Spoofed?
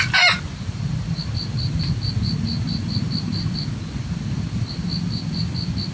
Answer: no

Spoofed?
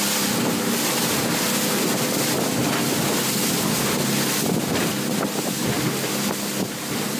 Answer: no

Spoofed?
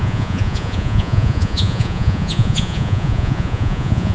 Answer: yes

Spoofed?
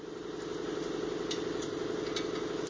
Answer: no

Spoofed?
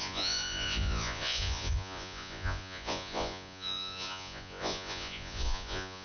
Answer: yes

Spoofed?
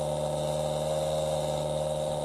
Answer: no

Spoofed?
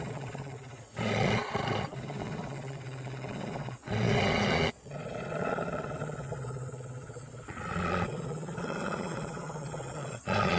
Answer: yes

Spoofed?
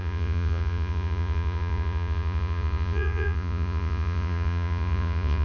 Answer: yes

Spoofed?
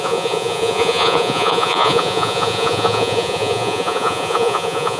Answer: yes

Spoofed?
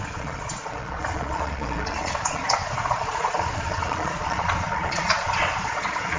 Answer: yes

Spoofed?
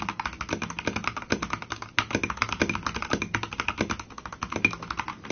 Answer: no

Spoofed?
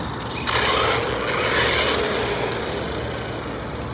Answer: no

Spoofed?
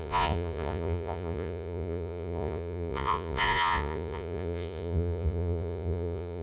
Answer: yes